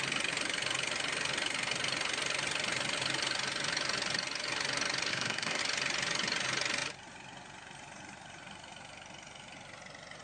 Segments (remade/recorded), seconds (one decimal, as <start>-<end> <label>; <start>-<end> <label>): 0.0-5.1 recorded; 5.1-5.6 remade; 5.6-10.2 recorded